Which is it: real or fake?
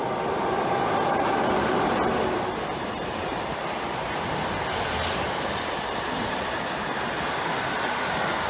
real